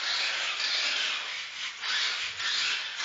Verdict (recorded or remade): recorded